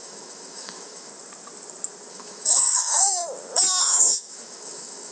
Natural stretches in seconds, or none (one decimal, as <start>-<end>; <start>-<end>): 1.1-2.1; 3.2-3.8